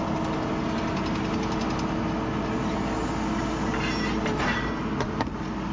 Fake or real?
real